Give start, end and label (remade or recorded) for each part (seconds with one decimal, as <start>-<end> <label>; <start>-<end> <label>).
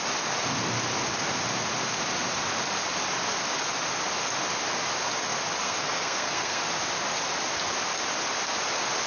0.0-5.6 recorded; 5.6-6.7 remade; 6.7-9.1 recorded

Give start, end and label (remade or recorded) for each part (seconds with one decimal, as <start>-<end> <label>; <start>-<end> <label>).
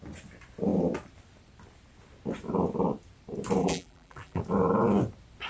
0.0-3.6 recorded; 3.6-4.4 remade; 4.4-5.5 recorded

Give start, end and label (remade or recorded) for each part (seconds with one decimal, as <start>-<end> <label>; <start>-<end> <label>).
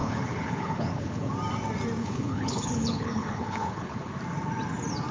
0.0-1.3 remade; 1.3-2.0 recorded; 2.0-4.1 remade; 4.1-5.1 recorded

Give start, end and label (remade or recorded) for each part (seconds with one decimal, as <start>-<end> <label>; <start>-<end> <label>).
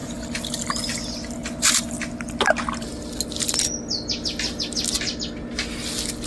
0.0-6.3 recorded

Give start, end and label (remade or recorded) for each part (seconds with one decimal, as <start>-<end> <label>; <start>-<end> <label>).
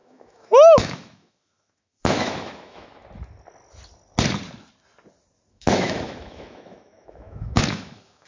0.0-3.0 remade; 3.0-5.5 recorded; 5.5-8.3 remade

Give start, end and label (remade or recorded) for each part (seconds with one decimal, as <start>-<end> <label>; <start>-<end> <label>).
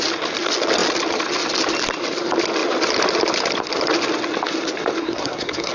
0.0-5.0 recorded; 5.0-5.7 remade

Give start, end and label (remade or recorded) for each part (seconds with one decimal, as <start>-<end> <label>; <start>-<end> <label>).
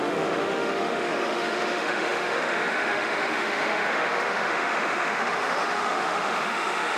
0.0-7.0 remade